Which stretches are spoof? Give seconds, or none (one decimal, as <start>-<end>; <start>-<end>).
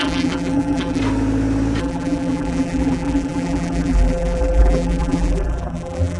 0.0-1.0; 1.8-6.2